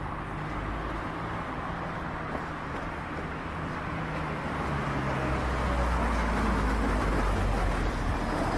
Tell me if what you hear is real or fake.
real